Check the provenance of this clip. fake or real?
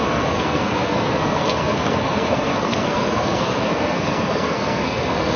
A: fake